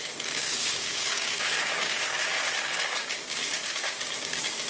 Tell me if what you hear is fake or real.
fake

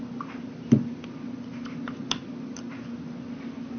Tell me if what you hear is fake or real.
real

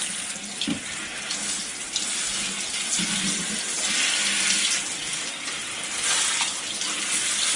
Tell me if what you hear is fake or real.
real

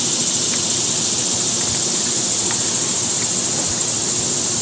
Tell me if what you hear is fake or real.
real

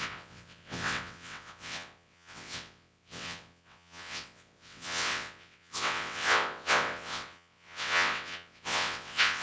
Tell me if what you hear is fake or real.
fake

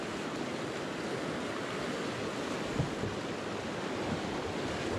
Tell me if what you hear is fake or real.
real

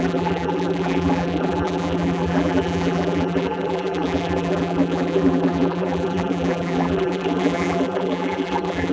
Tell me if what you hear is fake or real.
fake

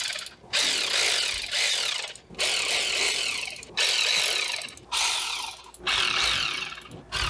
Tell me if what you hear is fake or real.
real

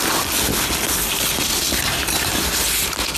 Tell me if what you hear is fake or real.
real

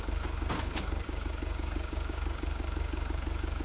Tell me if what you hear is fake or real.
fake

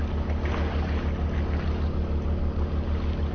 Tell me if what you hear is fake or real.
real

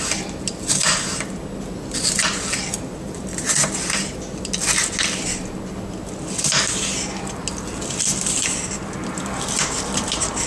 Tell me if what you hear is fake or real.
real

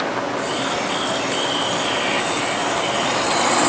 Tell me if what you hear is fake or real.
real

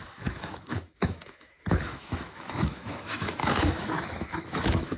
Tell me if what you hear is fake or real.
fake